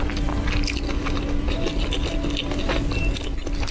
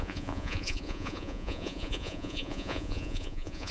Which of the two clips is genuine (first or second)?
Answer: first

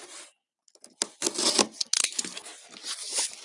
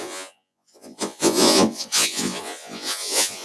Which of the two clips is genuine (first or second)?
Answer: first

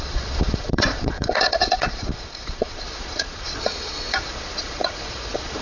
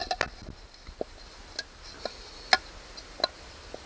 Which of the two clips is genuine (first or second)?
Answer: second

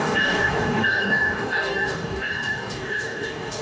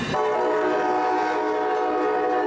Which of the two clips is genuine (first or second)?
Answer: second